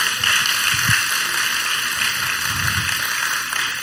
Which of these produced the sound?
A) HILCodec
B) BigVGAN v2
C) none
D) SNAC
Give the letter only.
C